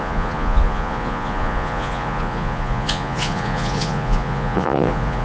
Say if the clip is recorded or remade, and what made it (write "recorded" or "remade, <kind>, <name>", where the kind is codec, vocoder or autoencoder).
remade, vocoder, Vocos